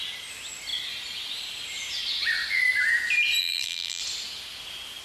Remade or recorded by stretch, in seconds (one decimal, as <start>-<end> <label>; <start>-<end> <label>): 0.0-3.4 recorded; 3.4-4.0 remade; 4.0-5.0 recorded

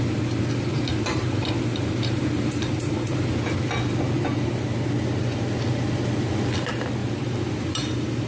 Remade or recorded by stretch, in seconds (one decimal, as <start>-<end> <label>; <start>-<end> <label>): 0.0-0.9 recorded; 0.9-3.3 remade; 3.3-7.0 recorded; 7.0-8.3 remade

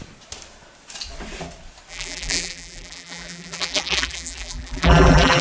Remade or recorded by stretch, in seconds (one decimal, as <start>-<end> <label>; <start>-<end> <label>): 0.0-1.9 recorded; 1.9-5.4 remade

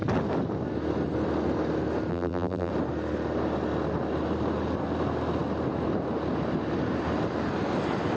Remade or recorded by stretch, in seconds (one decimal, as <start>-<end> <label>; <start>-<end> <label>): 0.0-2.1 recorded; 2.1-2.7 remade; 2.7-8.2 recorded

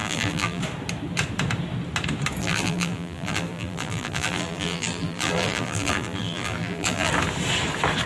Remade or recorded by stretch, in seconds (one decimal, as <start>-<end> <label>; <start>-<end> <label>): 0.0-0.6 remade; 0.6-2.4 recorded; 2.4-7.1 remade; 7.1-8.1 recorded

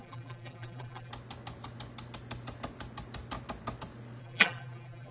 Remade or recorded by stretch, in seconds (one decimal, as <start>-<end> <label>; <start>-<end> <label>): 0.0-1.1 remade; 1.1-4.2 recorded; 4.2-5.1 remade

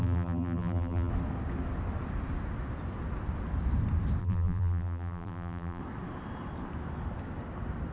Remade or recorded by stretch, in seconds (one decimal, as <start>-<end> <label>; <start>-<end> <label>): 0.0-1.1 remade; 1.1-4.2 recorded; 4.2-5.8 remade; 5.8-7.9 recorded